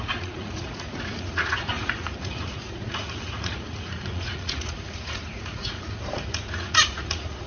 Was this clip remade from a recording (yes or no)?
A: yes